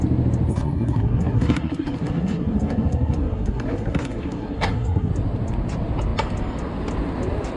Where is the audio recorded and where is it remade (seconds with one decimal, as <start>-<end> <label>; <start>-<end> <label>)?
0.0-0.5 recorded; 0.5-5.1 remade; 5.1-7.6 recorded